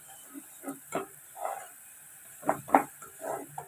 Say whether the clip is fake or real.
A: fake